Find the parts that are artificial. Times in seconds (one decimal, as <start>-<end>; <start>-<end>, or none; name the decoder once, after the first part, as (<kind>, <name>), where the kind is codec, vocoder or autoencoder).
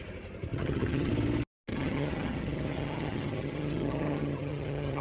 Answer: 0.5-1.1 (vocoder, HiFi-GAN); 1.7-5.0